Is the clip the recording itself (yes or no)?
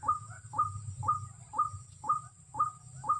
no